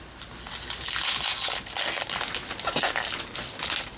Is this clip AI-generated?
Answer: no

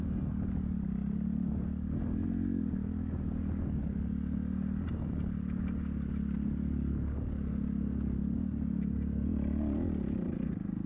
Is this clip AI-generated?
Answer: no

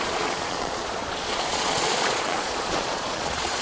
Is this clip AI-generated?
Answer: yes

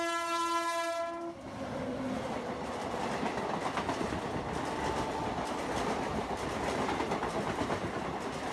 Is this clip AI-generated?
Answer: no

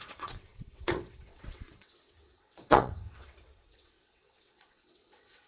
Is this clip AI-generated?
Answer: yes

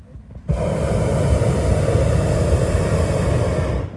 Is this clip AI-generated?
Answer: no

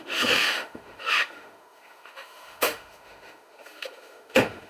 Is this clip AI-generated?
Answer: yes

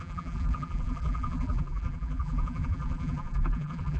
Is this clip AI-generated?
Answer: yes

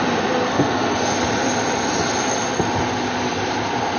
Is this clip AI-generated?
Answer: no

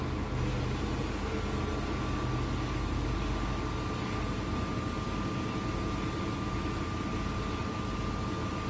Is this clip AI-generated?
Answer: no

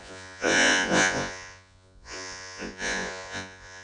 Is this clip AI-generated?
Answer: yes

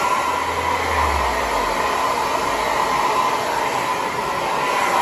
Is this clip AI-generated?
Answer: no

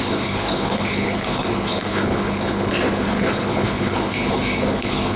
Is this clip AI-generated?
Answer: yes